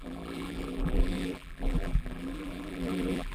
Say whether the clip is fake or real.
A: fake